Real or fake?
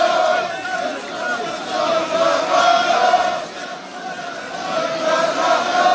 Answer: real